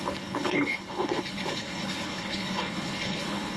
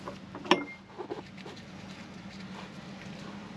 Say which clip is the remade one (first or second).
first